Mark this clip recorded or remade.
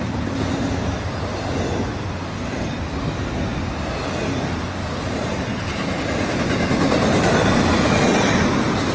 recorded